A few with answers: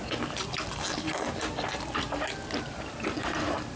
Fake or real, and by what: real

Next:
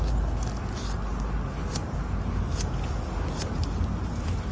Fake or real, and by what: real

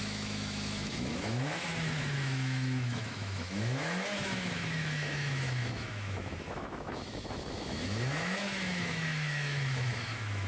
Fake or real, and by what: fake, autoencoder, DAC-VAE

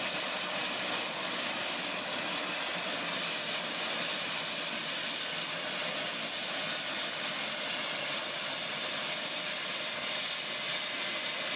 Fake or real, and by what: real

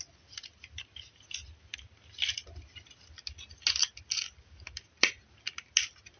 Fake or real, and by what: real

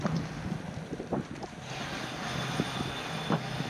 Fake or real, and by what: real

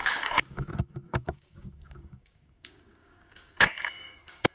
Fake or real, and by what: fake, codec, DAC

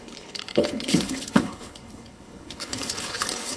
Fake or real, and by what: fake, codec, HILCodec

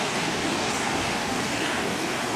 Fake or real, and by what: fake, codec, DAC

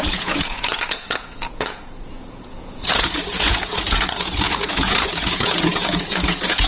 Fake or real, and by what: fake, vocoder, Vocos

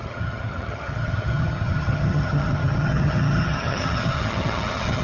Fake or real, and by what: fake, vocoder, HiFi-GAN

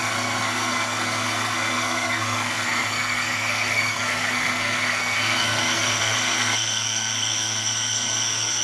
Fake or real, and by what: fake, codec, SNAC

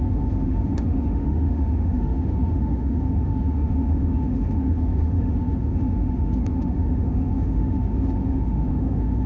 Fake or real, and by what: fake, autoencoder, DAC-VAE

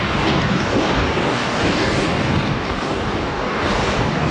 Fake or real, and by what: fake, codec, DAC